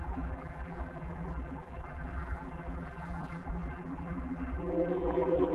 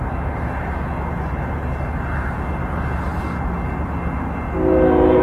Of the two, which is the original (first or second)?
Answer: second